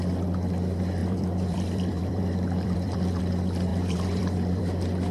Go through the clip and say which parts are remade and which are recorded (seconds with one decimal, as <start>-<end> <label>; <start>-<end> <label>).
0.0-1.0 recorded; 1.0-3.2 remade; 3.2-3.7 recorded; 3.7-4.6 remade; 4.6-5.1 recorded

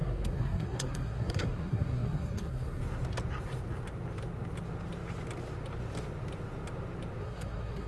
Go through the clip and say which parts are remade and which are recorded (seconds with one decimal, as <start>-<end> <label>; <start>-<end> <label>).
0.0-2.8 remade; 2.8-7.2 recorded; 7.2-7.9 remade